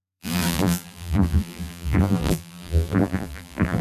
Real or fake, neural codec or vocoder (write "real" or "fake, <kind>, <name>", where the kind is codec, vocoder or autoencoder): fake, vocoder, BigVGAN v2